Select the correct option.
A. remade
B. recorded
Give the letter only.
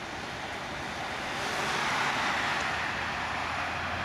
B